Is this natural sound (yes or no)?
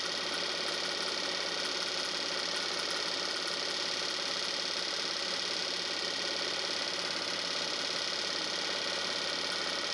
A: yes